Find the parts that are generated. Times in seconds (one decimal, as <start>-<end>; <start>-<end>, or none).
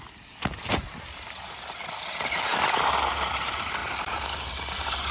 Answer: none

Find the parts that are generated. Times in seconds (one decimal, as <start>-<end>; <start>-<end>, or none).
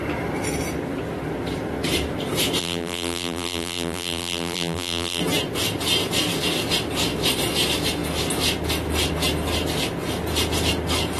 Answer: 2.6-5.2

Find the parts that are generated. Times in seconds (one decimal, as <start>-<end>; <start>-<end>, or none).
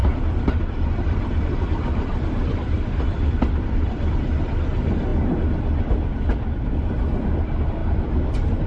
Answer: 0.0-4.1; 7.8-8.7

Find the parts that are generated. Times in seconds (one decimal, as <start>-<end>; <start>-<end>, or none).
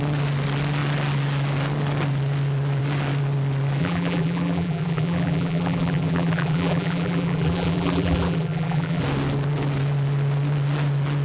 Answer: 3.8-9.0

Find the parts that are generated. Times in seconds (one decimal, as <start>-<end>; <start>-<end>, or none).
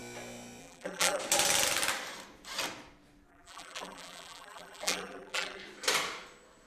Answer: 0.6-1.2; 3.3-5.6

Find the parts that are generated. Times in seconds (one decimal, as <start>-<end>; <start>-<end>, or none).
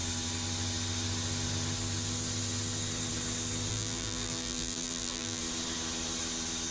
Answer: 3.7-5.4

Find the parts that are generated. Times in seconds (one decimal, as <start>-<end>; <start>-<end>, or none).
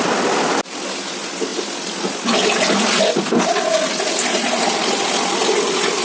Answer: none